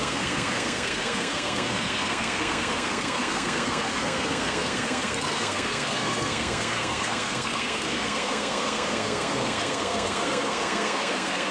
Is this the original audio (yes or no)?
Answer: no